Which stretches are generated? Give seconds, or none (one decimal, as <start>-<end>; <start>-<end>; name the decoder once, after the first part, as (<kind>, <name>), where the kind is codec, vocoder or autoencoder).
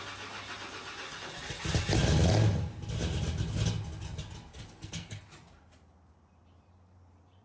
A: 4.5-5.2 (codec, SNAC)